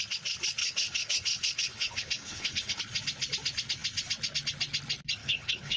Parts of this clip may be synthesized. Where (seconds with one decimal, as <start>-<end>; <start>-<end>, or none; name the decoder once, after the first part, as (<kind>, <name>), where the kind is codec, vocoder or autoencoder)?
0.6-2.8 (codec, HILCodec); 5.2-5.8